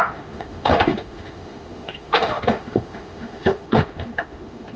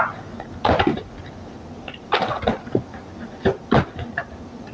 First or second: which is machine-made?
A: first